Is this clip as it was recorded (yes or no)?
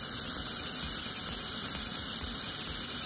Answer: yes